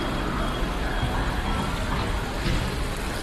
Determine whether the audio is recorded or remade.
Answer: recorded